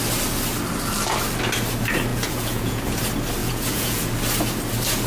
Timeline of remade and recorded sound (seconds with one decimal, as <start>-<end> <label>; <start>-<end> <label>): 0.0-2.1 recorded; 2.1-3.0 remade; 3.0-3.4 recorded; 3.4-4.1 remade; 4.1-5.1 recorded